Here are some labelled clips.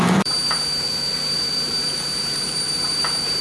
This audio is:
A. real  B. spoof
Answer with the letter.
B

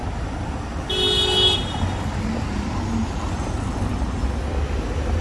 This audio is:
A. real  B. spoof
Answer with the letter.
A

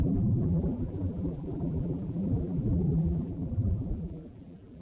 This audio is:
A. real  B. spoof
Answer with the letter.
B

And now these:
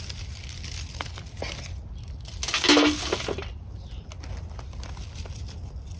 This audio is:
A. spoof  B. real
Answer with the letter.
B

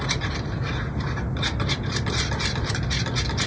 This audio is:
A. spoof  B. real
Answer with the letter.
B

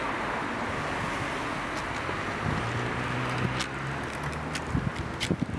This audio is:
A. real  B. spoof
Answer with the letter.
A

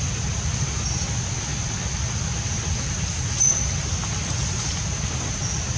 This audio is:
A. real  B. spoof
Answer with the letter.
A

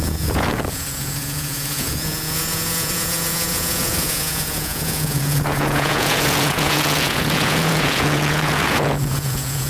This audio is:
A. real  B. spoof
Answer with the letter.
B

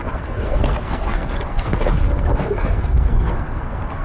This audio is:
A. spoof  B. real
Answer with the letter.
A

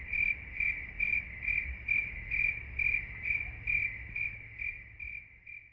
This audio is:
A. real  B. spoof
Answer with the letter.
B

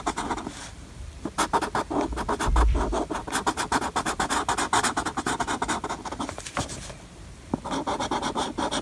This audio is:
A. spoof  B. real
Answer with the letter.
B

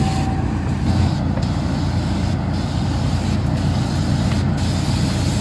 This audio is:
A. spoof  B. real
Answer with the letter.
B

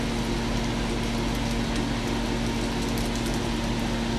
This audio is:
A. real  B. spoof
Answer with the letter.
A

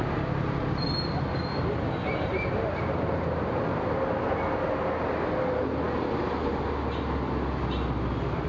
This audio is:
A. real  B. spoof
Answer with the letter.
A